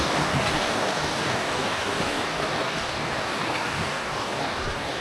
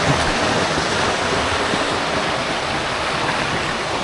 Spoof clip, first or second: first